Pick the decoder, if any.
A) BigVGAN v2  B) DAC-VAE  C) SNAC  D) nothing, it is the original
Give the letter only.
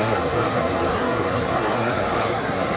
C